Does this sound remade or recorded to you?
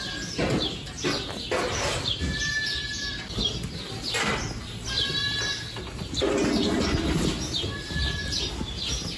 recorded